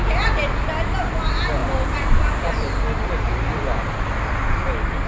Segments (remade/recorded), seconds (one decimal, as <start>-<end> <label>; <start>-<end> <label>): 0.0-5.1 recorded